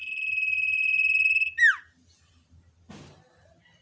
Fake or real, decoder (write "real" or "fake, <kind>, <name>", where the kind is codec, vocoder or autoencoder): real